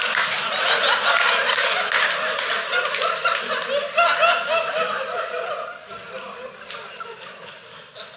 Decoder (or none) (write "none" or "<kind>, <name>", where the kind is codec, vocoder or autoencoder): none